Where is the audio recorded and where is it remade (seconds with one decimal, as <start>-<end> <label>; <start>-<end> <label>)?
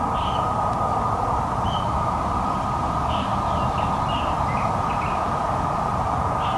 0.0-3.3 remade; 3.3-5.9 recorded; 5.9-6.6 remade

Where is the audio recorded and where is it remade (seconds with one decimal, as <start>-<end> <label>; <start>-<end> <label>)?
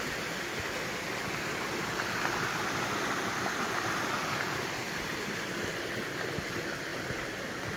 0.0-7.8 recorded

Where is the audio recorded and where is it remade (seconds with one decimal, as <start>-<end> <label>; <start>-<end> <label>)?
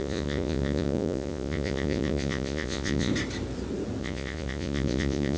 0.0-3.1 remade; 3.1-4.0 recorded; 4.0-5.4 remade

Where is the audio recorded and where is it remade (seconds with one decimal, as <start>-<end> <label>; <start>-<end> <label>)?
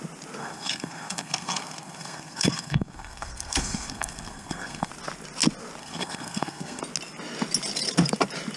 0.0-0.4 recorded; 0.4-4.9 remade; 4.9-5.8 recorded; 5.8-6.8 remade; 6.8-8.6 recorded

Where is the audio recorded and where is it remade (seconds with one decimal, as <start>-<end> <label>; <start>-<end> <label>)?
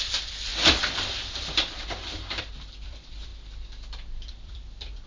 0.0-0.5 remade; 0.5-2.4 recorded; 2.4-3.3 remade; 3.3-4.3 recorded; 4.3-5.1 remade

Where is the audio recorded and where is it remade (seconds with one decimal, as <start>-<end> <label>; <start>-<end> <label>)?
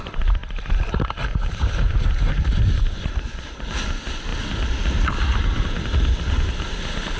0.0-7.2 recorded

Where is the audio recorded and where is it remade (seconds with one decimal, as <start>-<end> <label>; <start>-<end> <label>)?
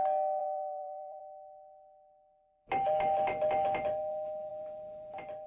0.0-0.4 recorded; 0.4-1.2 remade; 1.2-4.5 recorded; 4.5-5.5 remade